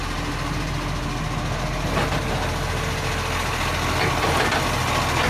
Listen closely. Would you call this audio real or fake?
real